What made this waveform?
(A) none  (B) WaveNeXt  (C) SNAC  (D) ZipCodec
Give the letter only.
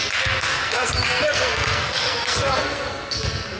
C